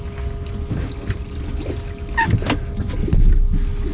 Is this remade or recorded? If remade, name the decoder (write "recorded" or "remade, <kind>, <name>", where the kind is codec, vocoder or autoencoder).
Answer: recorded